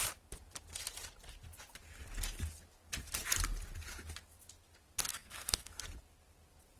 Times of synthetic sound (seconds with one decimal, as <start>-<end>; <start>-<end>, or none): 5.1-5.7